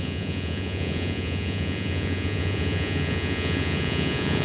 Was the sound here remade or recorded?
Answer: remade